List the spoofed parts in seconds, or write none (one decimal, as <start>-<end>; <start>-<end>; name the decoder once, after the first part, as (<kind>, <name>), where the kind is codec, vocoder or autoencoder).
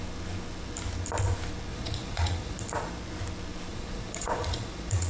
1.7-2.9 (vocoder, Vocos); 3.7-5.1